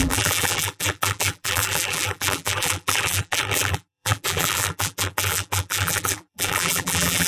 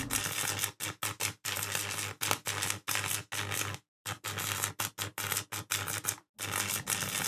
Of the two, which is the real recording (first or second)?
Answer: second